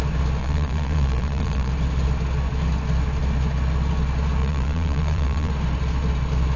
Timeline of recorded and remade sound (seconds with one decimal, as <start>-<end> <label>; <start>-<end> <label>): 0.0-0.4 recorded; 0.4-1.7 remade; 1.7-4.4 recorded; 4.4-5.5 remade; 5.5-6.6 recorded